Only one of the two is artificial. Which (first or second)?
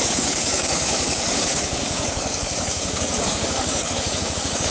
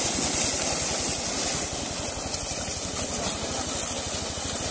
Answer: first